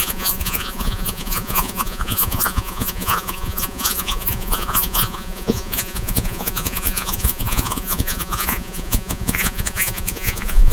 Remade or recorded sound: remade